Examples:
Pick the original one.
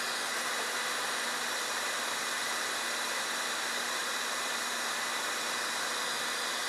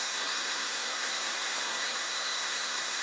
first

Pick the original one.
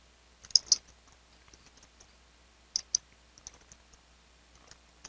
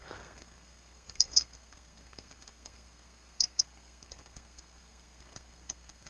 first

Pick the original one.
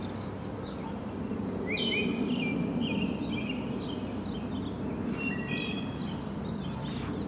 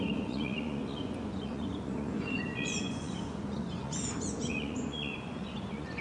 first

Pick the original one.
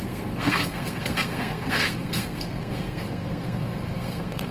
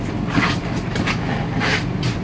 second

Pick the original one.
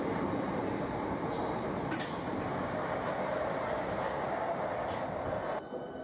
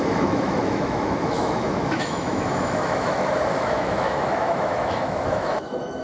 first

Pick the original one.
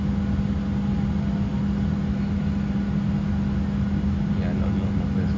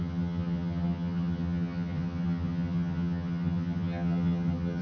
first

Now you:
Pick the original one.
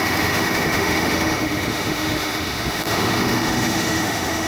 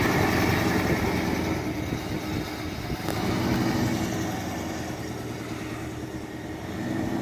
second